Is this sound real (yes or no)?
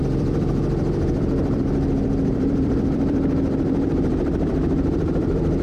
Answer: no